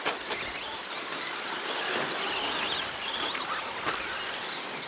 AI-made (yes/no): no